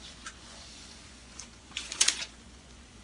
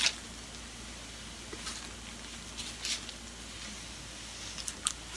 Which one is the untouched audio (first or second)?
second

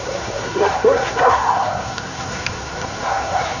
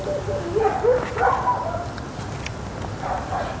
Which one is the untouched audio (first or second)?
second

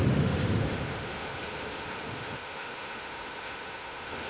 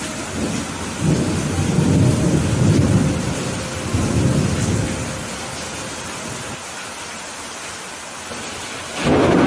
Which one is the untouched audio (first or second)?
second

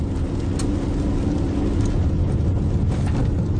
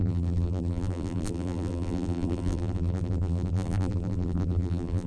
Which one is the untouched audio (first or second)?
first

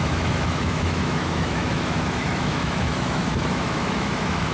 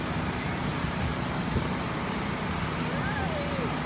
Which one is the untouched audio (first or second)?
second